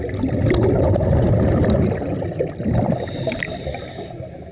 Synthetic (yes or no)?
no